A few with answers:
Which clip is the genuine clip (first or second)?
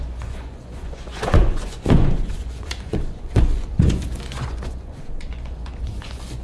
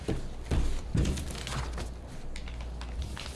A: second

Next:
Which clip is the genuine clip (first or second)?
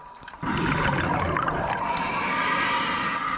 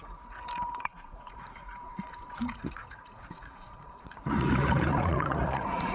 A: first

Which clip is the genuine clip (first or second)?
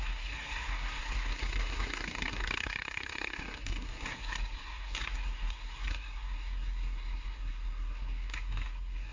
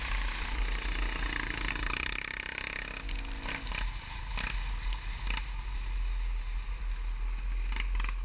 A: second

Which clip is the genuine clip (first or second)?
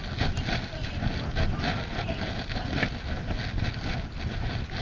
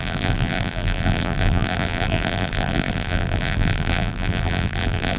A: first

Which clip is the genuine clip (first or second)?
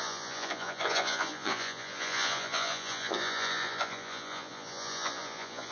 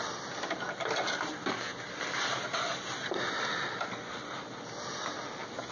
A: second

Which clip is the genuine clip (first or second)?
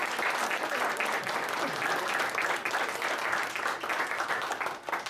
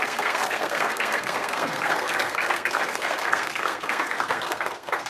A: first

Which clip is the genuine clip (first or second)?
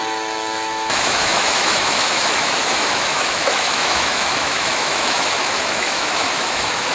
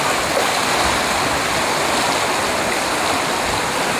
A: second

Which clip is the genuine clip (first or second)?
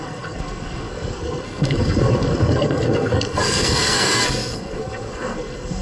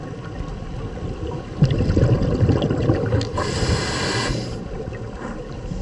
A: second